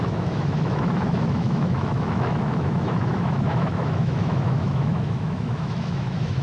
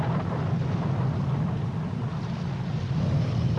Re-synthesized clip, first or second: first